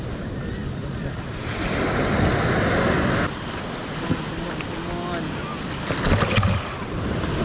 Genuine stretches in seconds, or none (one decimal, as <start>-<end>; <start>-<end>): 0.0-7.4